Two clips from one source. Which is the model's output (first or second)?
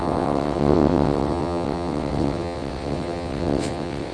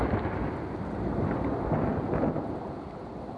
first